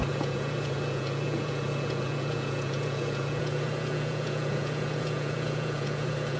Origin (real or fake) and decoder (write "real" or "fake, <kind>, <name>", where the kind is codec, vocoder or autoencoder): fake, vocoder, Vocos